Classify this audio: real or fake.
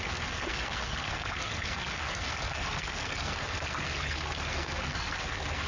fake